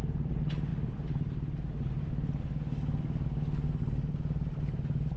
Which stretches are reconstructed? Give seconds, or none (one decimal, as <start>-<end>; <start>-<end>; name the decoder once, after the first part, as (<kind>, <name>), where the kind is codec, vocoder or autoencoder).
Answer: none